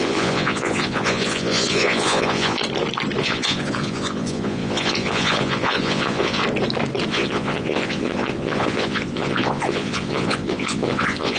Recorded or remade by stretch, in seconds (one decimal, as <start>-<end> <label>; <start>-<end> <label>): 0.0-2.6 remade; 2.6-3.2 recorded; 3.2-6.4 remade; 6.4-7.1 recorded; 7.1-11.4 remade